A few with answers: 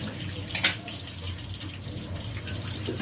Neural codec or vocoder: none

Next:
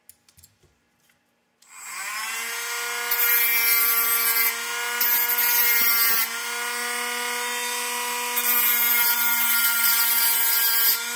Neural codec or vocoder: none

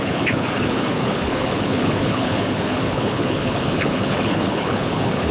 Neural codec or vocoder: codec, HILCodec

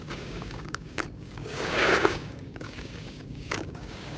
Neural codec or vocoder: codec, DAC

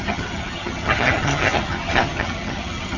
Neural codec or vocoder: vocoder, HiFi-GAN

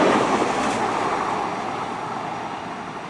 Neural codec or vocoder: none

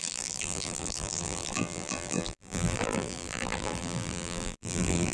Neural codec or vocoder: vocoder, BigVGAN v2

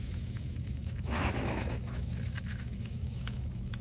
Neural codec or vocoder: autoencoder, DAC-VAE